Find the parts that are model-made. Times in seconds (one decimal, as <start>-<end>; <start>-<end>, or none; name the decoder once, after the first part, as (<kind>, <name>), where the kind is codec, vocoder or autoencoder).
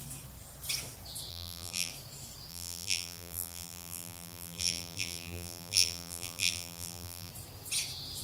1.3-1.9 (vocoder, BigVGAN v2); 2.5-7.3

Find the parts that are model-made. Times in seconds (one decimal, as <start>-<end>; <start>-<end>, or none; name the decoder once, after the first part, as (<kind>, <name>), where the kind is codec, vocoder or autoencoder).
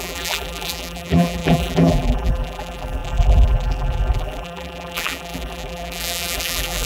0.0-6.9 (vocoder, BigVGAN v2)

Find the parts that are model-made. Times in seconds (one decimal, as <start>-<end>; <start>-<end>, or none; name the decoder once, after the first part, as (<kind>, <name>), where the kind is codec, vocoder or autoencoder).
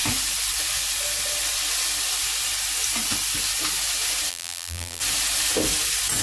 4.3-5.0 (vocoder, BigVGAN v2)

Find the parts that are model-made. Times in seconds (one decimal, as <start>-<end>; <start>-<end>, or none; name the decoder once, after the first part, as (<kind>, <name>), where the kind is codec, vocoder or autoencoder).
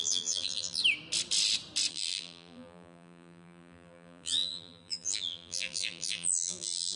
0.0-0.8 (vocoder, BigVGAN v2); 1.9-7.0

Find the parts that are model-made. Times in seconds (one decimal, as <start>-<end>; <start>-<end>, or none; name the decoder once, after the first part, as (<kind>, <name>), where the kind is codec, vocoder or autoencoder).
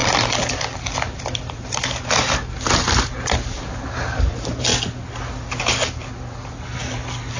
1.4-4.7 (vocoder, BigVGAN v2)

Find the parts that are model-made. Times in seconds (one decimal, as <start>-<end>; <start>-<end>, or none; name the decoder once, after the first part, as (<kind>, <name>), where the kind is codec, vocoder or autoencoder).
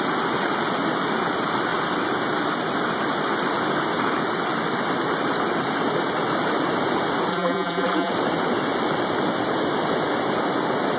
7.3-8.1 (vocoder, BigVGAN v2)